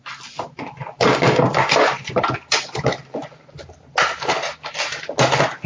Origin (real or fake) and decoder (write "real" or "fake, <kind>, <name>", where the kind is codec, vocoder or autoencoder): real